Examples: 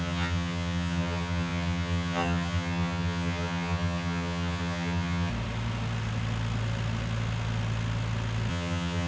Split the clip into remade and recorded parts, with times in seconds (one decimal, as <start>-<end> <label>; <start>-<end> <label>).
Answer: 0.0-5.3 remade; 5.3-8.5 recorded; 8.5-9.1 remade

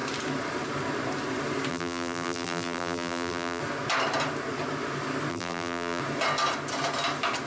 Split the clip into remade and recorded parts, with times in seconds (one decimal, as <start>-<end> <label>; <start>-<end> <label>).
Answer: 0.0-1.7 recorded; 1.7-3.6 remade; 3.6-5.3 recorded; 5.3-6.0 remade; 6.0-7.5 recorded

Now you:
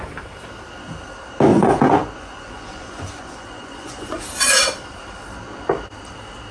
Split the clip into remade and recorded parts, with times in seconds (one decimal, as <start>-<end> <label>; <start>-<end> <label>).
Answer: 0.0-1.5 recorded; 1.5-4.2 remade; 4.2-6.5 recorded

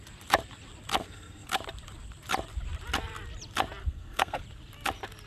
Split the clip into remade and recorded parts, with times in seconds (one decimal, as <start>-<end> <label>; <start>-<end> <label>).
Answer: 0.0-1.0 recorded; 1.0-1.5 remade; 1.5-3.8 recorded; 3.8-4.4 remade; 4.4-5.3 recorded

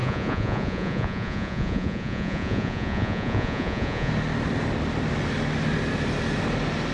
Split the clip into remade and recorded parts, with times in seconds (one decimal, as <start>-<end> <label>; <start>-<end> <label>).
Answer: 0.0-4.1 remade; 4.1-6.9 recorded

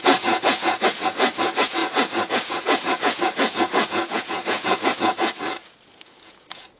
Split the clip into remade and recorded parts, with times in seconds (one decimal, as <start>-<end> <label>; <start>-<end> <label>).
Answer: 0.0-6.8 remade

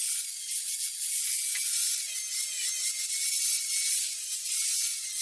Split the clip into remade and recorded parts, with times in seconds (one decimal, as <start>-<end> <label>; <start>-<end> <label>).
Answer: 0.0-5.2 recorded